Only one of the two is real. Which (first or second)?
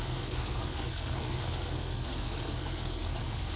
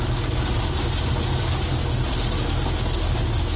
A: second